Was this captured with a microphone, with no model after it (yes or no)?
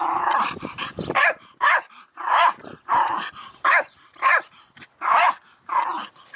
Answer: no